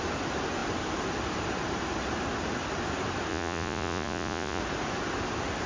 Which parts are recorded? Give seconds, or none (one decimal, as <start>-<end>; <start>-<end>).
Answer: 0.0-3.3; 4.6-5.7